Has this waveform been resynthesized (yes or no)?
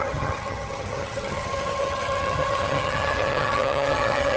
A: yes